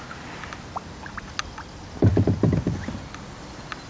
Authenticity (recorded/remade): recorded